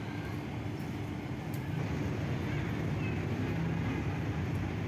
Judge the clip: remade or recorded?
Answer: recorded